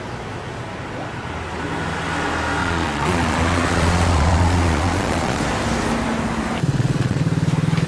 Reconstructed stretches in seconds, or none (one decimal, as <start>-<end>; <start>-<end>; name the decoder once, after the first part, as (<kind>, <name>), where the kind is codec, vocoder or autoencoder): 2.6-5.4 (vocoder, Vocos); 6.7-7.2